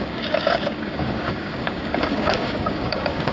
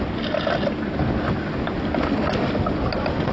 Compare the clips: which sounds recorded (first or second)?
second